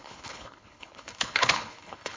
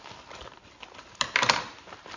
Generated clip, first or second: first